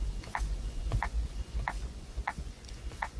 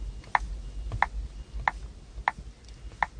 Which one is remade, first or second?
first